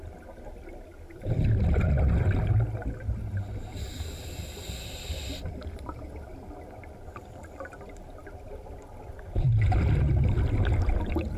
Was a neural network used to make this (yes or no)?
no